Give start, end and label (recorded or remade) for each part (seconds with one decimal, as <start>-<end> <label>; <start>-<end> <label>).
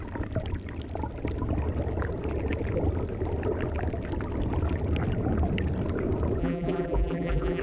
0.0-6.4 recorded; 6.4-7.6 remade